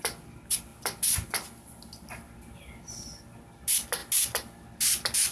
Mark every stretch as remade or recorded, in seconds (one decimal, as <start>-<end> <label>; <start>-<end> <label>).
0.0-5.3 recorded